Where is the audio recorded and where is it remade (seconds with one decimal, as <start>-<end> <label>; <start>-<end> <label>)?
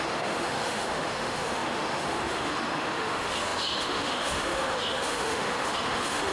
0.0-6.3 remade